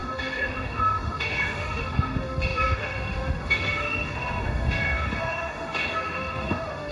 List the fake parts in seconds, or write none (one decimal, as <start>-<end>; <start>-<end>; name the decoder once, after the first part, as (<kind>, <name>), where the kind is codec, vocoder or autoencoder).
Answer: 0.0-6.9 (autoencoder, DAC-VAE)